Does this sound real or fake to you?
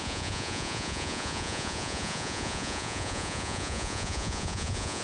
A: fake